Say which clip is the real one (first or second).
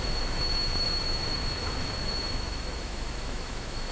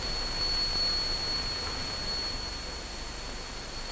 second